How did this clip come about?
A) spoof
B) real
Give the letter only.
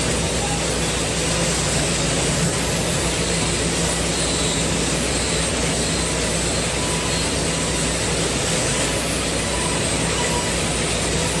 B